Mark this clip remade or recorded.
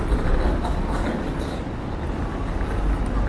recorded